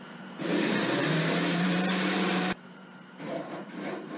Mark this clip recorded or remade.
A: remade